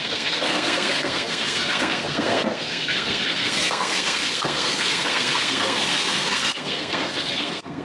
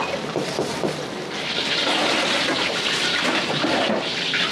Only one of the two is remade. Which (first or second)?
first